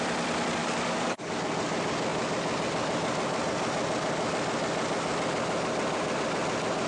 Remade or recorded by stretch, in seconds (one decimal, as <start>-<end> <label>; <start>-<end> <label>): 0.0-0.6 recorded; 0.6-1.3 remade; 1.3-6.9 recorded